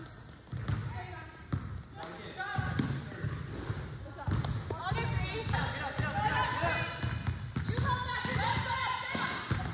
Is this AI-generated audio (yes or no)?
no